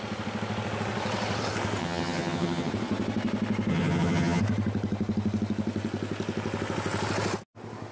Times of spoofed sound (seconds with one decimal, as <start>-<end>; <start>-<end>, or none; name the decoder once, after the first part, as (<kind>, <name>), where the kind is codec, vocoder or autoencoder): 1.8-2.7 (vocoder, HiFi-GAN); 3.7-4.4